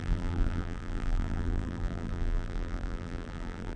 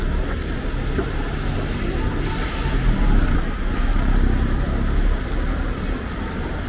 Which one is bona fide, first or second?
second